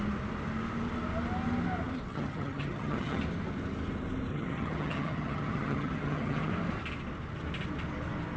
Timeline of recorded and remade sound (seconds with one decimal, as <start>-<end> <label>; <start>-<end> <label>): 0.0-2.1 recorded; 2.1-3.2 remade; 3.2-4.3 recorded; 4.3-6.5 remade; 6.5-8.4 recorded